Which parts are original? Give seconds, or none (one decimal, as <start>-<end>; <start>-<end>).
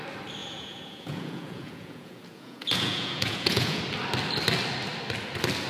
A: 0.0-0.4; 3.8-5.7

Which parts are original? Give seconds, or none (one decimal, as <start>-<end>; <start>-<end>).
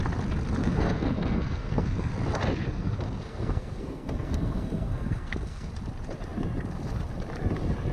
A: 0.0-0.6; 2.1-2.6; 5.7-7.9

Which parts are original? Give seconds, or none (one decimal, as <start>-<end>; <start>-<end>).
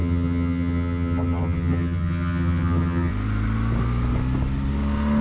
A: 3.1-5.2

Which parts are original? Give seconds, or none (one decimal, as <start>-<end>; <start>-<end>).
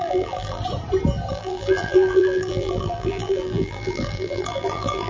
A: 0.6-1.3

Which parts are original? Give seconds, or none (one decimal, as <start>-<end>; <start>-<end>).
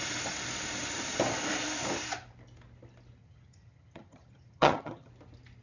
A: 0.0-3.2; 5.1-5.6